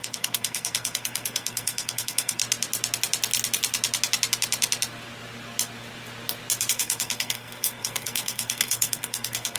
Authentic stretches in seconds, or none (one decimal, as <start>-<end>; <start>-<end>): 2.4-6.7